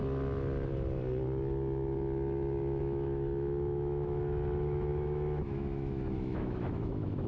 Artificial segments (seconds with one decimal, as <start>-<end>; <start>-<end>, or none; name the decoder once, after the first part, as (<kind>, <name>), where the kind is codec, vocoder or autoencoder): 2.8-7.3 (autoencoder, DAC-VAE)